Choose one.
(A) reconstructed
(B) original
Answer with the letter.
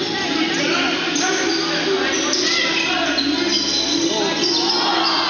B